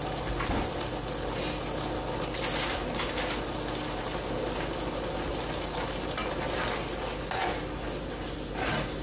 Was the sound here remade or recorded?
recorded